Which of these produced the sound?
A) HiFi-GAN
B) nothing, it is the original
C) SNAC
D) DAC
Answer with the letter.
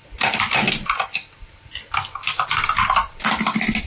B